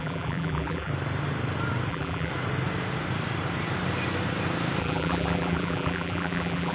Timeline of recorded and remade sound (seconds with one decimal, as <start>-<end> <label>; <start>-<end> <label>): 0.0-0.9 remade; 0.9-1.9 recorded; 1.9-2.3 remade; 2.3-4.8 recorded; 4.8-6.7 remade